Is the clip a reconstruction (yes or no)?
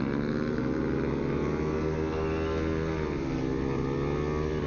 no